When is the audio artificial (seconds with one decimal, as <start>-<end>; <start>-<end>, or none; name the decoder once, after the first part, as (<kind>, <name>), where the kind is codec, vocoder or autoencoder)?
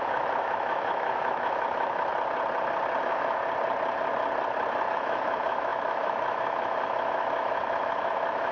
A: 0.0-2.1 (autoencoder, DAC-VAE); 3.0-3.4; 4.9-8.5